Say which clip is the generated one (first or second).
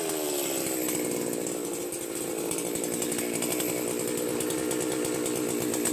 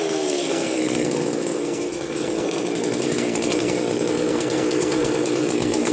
second